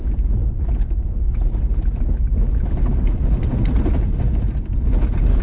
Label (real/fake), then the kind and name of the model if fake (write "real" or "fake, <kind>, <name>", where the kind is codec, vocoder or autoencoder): real